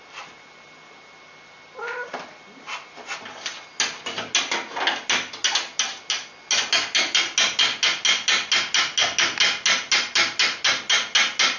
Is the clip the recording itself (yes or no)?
yes